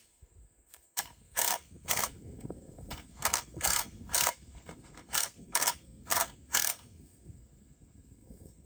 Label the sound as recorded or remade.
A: remade